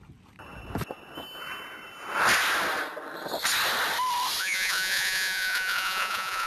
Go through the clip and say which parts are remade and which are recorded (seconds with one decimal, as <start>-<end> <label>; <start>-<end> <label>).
0.0-4.4 recorded; 4.4-6.5 remade